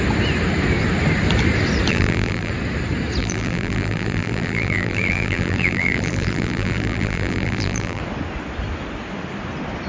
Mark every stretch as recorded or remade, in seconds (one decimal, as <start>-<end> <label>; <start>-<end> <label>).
0.0-1.9 recorded; 1.9-2.5 remade; 2.5-3.2 recorded; 3.2-8.0 remade; 8.0-9.9 recorded